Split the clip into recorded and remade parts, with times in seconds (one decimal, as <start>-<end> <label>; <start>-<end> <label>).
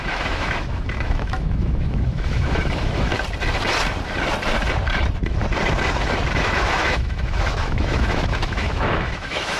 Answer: 0.0-3.1 remade; 3.1-6.4 recorded; 6.4-9.6 remade